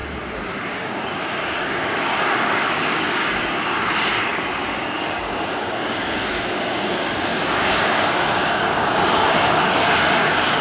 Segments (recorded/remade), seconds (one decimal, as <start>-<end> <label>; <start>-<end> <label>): 0.0-0.7 recorded; 0.7-10.6 remade